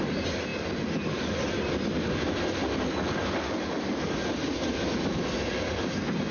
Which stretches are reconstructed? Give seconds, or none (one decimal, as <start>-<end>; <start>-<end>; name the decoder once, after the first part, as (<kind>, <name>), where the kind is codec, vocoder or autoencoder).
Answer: none